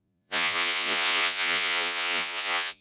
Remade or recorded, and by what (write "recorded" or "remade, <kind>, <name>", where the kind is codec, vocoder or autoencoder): remade, vocoder, Vocos